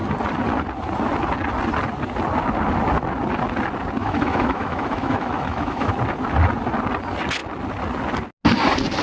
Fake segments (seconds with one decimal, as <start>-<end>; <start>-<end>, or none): 4.0-5.9